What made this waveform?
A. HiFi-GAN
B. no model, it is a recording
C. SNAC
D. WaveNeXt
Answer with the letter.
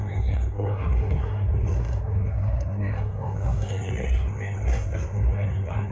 C